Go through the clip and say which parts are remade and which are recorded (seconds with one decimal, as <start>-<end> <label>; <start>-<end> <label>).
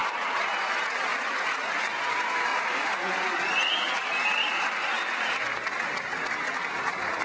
0.0-0.6 remade; 0.6-1.1 recorded; 1.1-1.7 remade; 1.7-2.5 recorded; 2.5-6.8 remade; 6.8-7.2 recorded